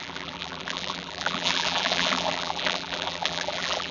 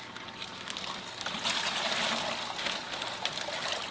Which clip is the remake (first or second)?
first